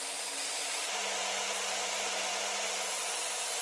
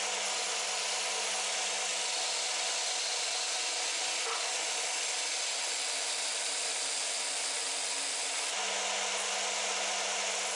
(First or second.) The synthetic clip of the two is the first